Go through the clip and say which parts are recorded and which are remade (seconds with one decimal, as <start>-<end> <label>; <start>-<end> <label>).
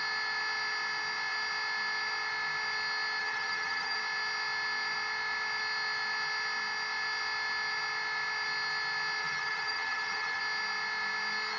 0.0-3.2 recorded; 3.2-4.0 remade; 4.0-9.2 recorded; 9.2-10.4 remade; 10.4-11.6 recorded